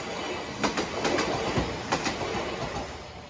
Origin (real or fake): real